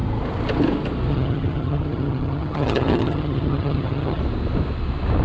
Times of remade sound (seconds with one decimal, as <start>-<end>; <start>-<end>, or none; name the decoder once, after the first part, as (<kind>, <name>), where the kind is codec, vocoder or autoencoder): 1.1-4.2 (vocoder, HiFi-GAN)

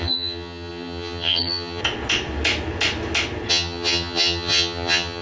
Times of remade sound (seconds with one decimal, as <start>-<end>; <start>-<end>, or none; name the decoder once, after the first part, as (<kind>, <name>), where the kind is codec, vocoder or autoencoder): 0.0-1.8 (vocoder, HiFi-GAN); 3.5-5.2

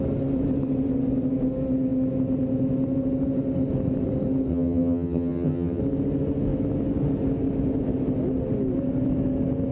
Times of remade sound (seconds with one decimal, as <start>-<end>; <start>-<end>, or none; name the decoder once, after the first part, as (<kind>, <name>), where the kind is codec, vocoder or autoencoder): 4.5-5.8 (vocoder, HiFi-GAN)

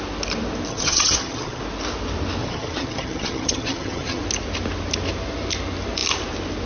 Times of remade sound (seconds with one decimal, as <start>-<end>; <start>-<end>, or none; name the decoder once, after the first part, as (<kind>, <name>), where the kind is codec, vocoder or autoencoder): 0.7-1.6 (vocoder, HiFi-GAN); 2.4-4.2

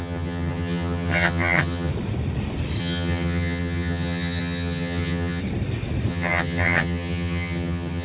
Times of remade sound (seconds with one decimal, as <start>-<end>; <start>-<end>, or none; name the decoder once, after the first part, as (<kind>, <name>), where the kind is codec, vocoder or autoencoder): 0.0-1.9 (vocoder, HiFi-GAN); 2.8-5.4; 6.1-8.0

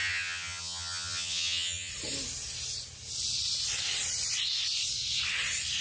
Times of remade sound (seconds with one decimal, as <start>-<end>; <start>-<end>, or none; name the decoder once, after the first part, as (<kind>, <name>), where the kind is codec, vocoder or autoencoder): 0.0-1.9 (vocoder, HiFi-GAN)